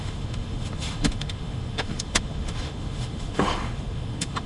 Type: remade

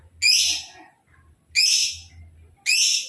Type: recorded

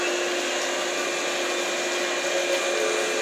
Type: recorded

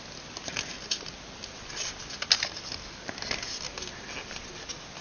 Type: recorded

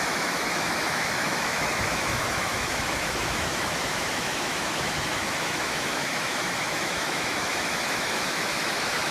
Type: remade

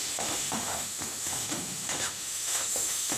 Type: remade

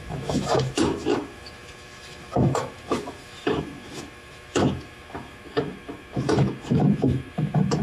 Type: remade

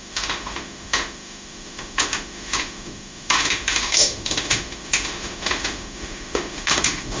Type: remade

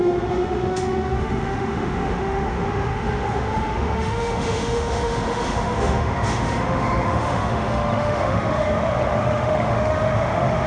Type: remade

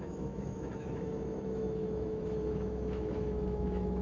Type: remade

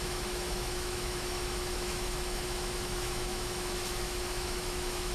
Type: remade